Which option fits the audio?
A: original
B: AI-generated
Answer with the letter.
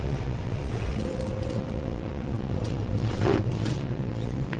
B